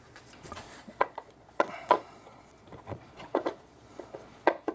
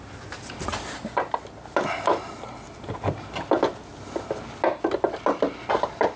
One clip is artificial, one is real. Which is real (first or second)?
second